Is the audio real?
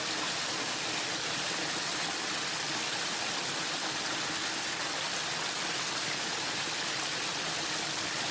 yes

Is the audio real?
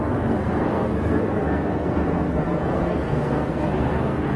no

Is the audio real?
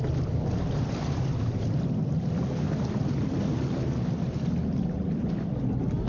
yes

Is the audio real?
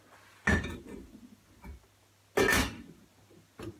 yes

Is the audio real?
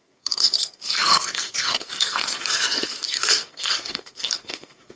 no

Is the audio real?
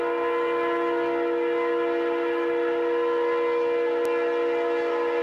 yes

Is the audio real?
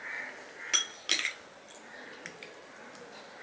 yes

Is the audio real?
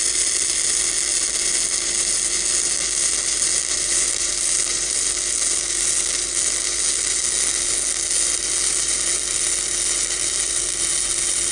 yes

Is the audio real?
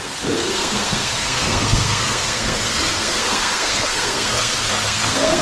no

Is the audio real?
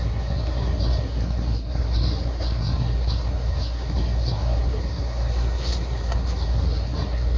no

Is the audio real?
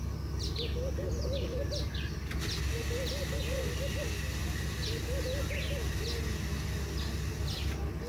yes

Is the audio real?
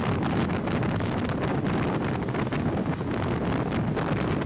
yes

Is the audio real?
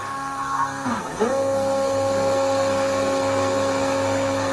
no